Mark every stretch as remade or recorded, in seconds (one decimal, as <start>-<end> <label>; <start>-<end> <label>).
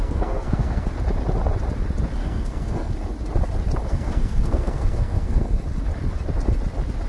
0.0-0.9 remade; 0.9-2.2 recorded; 2.2-2.9 remade; 2.9-3.9 recorded; 3.9-5.6 remade; 5.6-7.1 recorded